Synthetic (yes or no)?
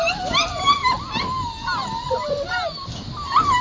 no